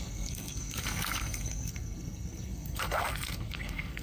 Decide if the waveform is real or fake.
fake